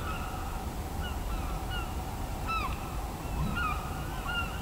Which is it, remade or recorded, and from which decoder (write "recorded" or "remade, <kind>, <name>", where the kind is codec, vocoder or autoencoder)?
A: recorded